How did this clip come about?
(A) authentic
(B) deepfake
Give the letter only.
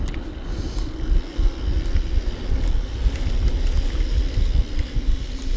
A